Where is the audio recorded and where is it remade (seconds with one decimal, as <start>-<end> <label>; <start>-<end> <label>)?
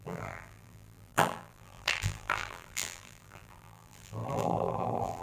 0.0-5.2 remade